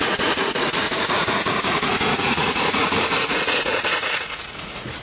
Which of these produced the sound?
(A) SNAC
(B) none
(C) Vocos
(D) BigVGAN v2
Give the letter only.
C